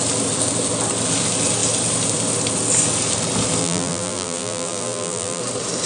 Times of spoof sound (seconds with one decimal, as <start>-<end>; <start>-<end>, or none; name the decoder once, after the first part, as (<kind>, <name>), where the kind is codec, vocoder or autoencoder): 3.6-5.4 (vocoder, BigVGAN v2)